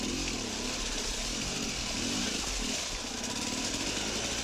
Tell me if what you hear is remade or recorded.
recorded